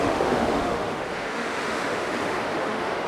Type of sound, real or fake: fake